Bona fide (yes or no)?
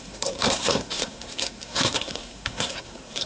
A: no